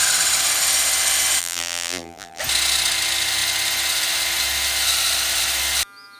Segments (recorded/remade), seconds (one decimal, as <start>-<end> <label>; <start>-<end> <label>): 0.0-1.4 recorded; 1.4-2.4 remade; 2.4-6.2 recorded